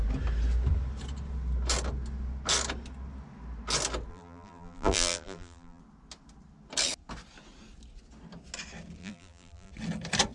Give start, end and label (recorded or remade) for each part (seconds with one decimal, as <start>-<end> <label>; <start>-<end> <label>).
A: 0.0-4.1 recorded; 4.1-5.8 remade; 5.8-9.0 recorded; 9.0-9.7 remade; 9.7-10.3 recorded